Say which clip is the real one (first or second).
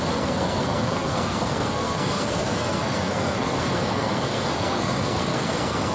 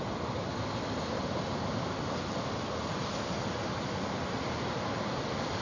second